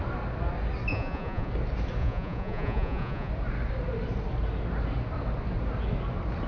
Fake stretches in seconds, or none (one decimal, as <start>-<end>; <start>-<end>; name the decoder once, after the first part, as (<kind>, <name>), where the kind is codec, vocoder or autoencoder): 0.9-1.5 (vocoder, Vocos); 2.0-3.3